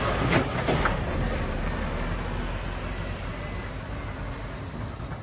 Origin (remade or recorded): recorded